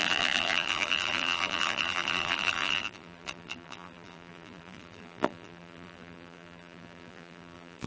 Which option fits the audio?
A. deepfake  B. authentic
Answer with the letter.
A